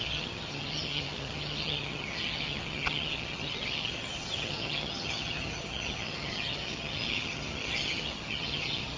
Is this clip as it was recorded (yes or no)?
no